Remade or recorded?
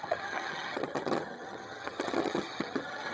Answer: remade